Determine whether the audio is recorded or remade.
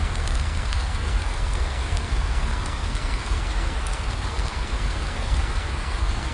remade